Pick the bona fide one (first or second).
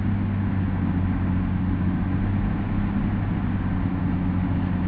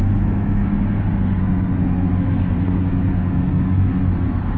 first